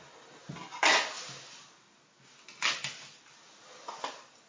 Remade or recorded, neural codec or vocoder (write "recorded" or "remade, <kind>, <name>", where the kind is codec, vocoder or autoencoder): recorded